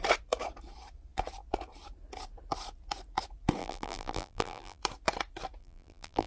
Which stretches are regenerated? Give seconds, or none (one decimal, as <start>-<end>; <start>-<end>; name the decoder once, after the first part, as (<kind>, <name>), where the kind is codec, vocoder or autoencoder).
3.6-4.8 (vocoder, BigVGAN v2); 5.6-6.3